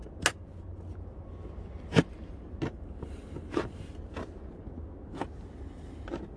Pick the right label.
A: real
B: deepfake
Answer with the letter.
A